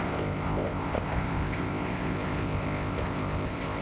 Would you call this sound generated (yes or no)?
yes